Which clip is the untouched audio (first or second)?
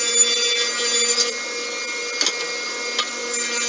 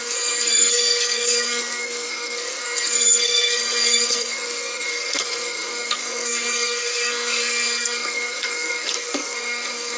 first